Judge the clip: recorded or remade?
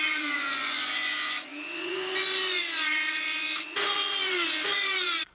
remade